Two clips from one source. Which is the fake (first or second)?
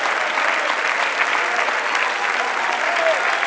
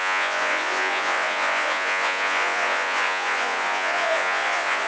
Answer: second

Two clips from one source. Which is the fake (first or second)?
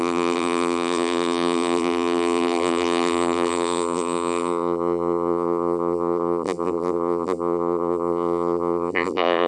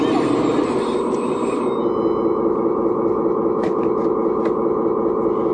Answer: first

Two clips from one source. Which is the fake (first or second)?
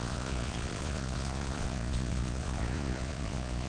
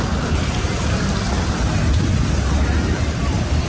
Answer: first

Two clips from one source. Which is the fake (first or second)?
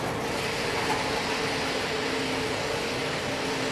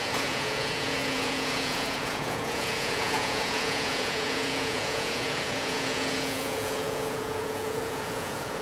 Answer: second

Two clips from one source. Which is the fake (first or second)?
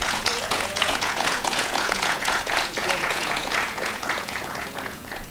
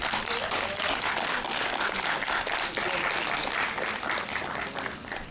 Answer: first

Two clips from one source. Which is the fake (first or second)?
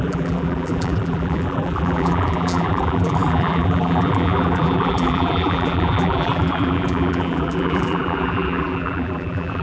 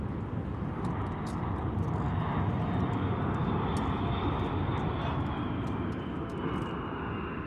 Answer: first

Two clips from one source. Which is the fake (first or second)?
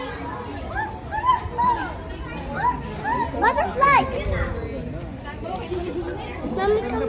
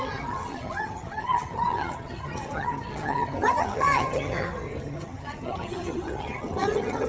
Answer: second